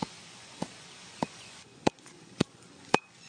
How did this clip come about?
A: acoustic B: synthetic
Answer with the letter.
B